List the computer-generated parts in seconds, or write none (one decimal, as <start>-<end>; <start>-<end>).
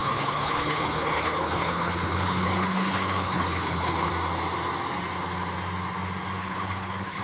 0.0-4.1; 6.4-7.2